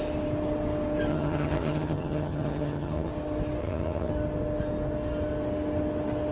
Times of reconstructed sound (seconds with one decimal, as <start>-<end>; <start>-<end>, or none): 1.1-3.1; 3.6-4.1